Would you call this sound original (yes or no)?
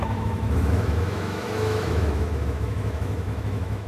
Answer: no